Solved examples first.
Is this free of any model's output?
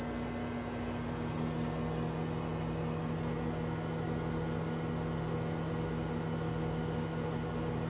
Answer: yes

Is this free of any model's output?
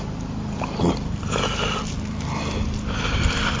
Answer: yes